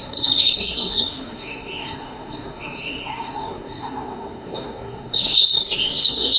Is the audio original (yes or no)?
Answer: no